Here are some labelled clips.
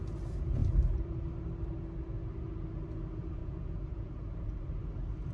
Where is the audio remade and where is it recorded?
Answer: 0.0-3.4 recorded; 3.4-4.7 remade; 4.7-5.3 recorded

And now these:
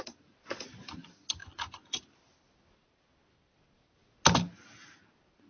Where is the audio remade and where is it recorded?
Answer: 0.0-1.4 recorded; 1.4-2.0 remade; 2.0-5.5 recorded

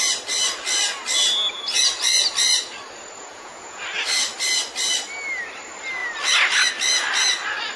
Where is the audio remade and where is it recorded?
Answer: 0.0-3.2 recorded; 3.2-3.8 remade; 3.8-7.8 recorded

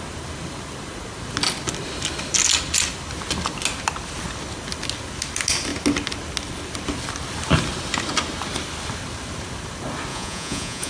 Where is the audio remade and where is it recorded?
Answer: 0.0-10.1 recorded; 10.1-10.9 remade

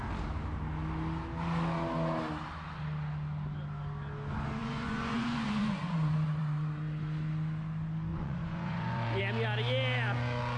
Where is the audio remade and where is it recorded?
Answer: 0.0-4.6 recorded; 4.6-6.4 remade; 6.4-8.1 recorded; 8.1-9.2 remade; 9.2-10.6 recorded